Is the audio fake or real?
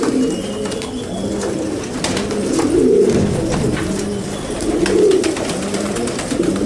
real